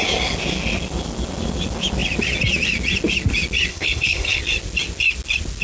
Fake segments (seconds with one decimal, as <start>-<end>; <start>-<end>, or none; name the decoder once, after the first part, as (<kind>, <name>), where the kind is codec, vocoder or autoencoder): 3.7-4.4 (codec, HILCodec)